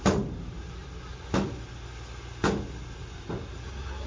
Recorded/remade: recorded